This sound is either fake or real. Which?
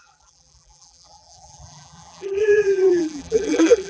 fake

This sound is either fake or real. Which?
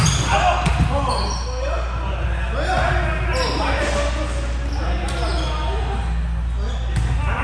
real